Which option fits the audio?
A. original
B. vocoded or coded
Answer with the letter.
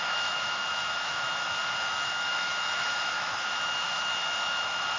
B